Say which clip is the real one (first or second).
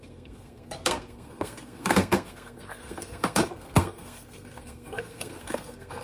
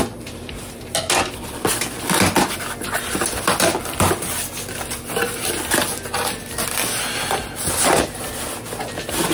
second